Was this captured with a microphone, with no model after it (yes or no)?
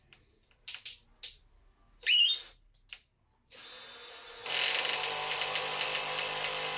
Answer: yes